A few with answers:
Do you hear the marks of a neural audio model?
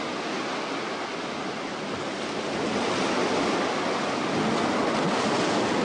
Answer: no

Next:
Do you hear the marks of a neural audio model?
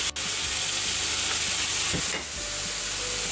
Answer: no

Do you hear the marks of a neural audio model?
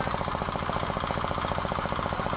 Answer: yes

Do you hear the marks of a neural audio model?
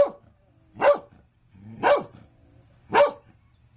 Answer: no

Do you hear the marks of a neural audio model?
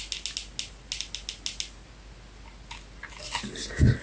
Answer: no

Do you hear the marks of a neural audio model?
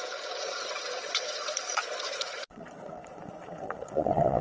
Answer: yes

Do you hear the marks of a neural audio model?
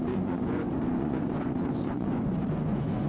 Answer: yes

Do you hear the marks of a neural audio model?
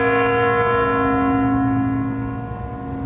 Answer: no